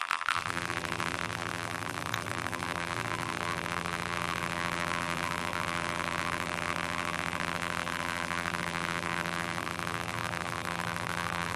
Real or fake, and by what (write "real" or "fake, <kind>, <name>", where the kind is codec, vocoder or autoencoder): fake, vocoder, BigVGAN v2